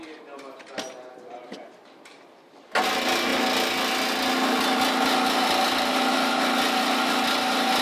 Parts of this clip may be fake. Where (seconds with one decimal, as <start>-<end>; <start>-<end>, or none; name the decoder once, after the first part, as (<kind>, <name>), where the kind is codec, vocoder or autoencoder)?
none